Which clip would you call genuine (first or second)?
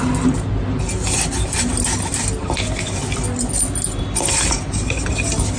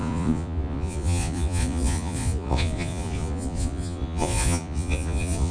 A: first